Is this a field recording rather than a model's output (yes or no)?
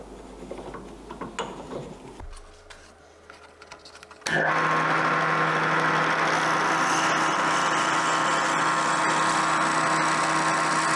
yes